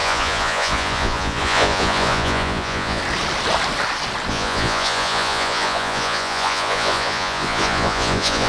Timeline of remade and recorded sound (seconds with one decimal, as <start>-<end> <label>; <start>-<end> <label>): 0.0-3.0 remade; 3.0-4.3 recorded; 4.3-8.5 remade